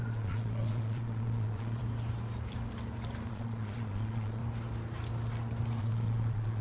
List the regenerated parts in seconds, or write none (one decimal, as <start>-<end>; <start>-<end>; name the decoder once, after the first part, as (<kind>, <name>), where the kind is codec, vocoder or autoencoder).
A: 0.0-1.8 (vocoder, Vocos); 3.3-4.4; 5.8-6.6